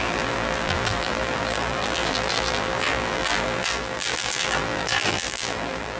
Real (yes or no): no